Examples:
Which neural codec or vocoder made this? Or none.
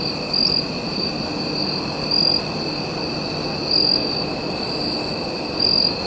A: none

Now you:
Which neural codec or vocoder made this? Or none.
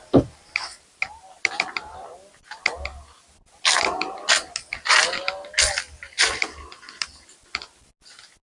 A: none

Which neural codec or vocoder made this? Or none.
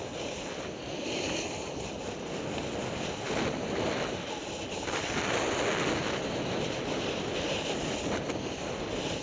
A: none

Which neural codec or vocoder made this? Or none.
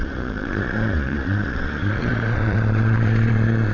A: vocoder, Vocos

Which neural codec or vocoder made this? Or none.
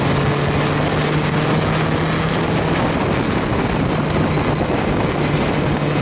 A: none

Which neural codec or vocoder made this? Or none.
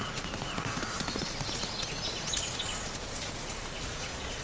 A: vocoder, Vocos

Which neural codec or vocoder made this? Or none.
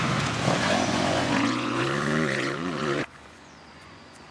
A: vocoder, Vocos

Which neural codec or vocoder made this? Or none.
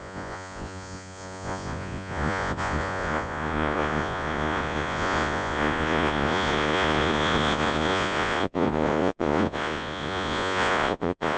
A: vocoder, Vocos